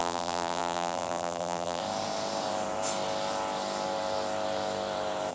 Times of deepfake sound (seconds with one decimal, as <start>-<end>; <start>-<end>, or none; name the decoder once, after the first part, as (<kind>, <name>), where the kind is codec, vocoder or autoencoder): 0.0-1.8 (vocoder, BigVGAN v2)